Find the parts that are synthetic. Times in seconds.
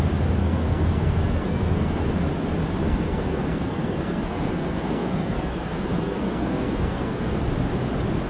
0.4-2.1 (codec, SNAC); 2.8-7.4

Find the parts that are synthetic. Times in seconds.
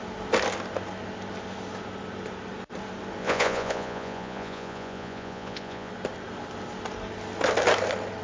3.2-5.9 (vocoder, Vocos)